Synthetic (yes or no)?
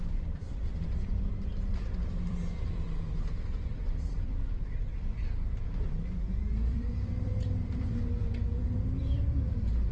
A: yes